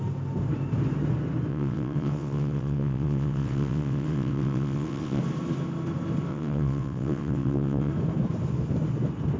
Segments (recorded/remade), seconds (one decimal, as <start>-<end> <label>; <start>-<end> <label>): 0.0-1.5 recorded; 1.5-5.2 remade; 5.2-6.3 recorded; 6.3-7.9 remade; 7.9-9.4 recorded